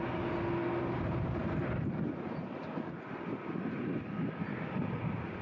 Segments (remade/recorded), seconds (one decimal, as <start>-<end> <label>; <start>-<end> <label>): 0.0-1.4 recorded; 1.4-4.6 remade; 4.6-5.4 recorded